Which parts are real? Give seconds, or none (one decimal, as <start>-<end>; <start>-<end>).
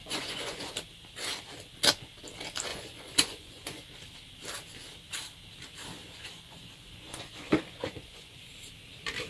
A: 0.7-2.7; 3.8-6.0; 8.5-9.3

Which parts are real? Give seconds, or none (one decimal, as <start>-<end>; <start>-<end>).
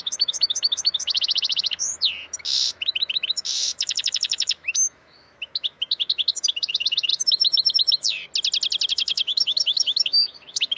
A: 8.2-8.9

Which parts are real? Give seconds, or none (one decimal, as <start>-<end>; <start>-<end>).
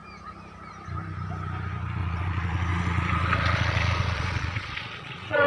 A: 0.0-2.0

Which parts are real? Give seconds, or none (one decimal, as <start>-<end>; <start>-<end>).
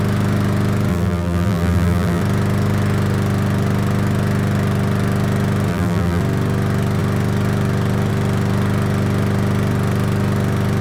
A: 0.0-0.9; 2.2-5.7; 6.2-10.8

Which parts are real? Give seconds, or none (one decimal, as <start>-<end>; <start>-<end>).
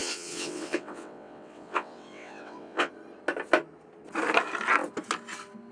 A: 2.9-5.7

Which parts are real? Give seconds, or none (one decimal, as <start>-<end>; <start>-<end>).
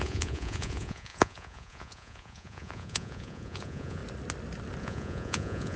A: 4.0-4.8